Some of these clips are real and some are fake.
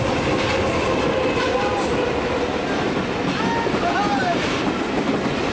real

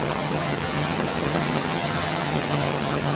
fake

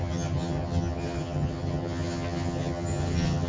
fake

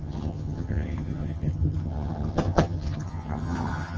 fake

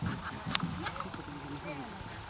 real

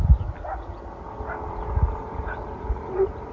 real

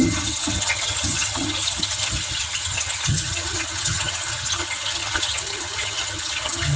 fake